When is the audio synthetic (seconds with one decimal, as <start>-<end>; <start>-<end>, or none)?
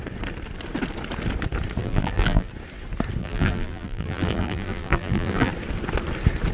1.8-2.5; 3.2-5.5